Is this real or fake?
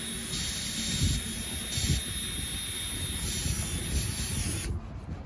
real